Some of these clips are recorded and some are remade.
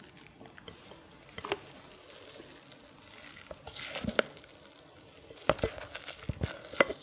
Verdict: recorded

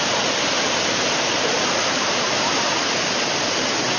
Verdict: recorded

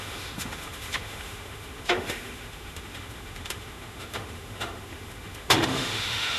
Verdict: remade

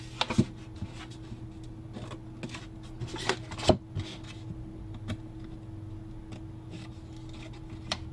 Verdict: recorded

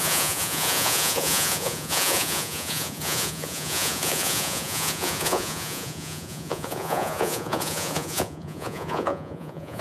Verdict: remade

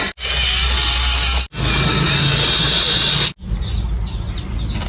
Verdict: recorded